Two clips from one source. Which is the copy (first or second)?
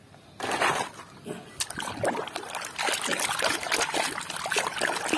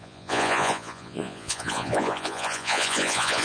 second